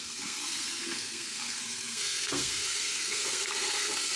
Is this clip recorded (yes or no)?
no